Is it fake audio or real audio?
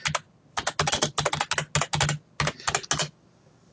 real